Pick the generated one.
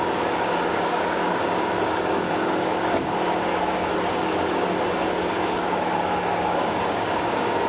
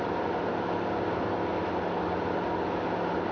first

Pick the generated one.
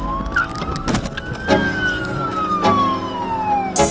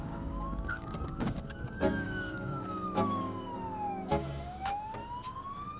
second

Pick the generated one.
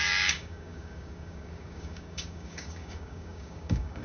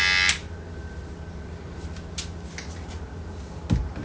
first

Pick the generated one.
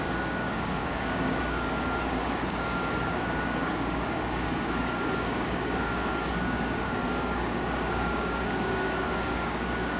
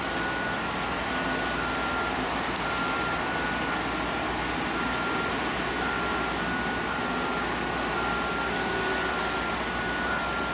first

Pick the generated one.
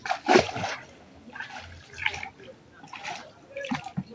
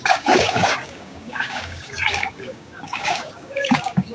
second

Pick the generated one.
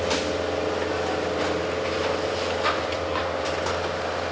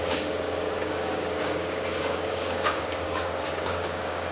second